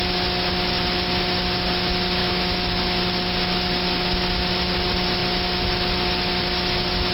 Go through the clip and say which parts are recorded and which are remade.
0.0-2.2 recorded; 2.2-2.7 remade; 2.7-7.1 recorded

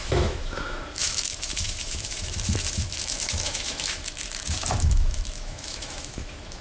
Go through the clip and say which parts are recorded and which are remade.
0.0-6.6 remade